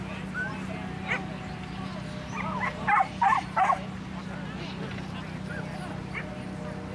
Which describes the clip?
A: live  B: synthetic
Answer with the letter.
A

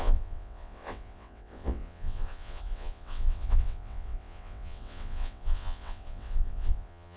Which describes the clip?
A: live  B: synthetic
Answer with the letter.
B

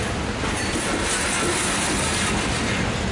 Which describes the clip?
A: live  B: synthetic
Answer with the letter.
A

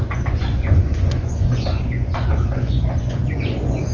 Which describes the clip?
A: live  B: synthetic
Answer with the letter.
B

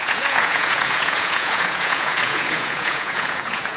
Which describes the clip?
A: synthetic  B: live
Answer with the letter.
A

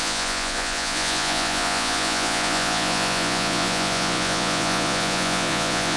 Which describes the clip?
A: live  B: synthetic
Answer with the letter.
B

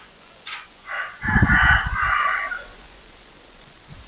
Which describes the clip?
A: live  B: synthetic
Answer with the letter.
B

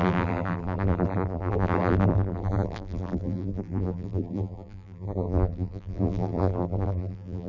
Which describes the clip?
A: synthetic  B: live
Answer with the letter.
A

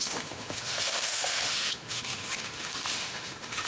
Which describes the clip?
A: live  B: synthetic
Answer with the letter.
B